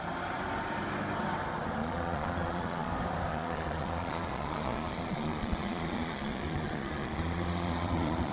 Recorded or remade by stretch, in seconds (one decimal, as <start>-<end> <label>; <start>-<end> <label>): 0.0-1.8 recorded; 1.8-2.9 remade; 2.9-3.3 recorded; 3.3-8.3 remade